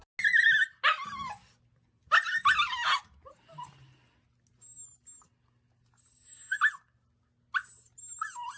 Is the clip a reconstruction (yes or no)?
no